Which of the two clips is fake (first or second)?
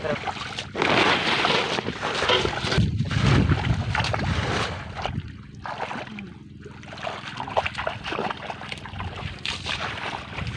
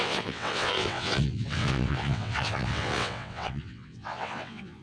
second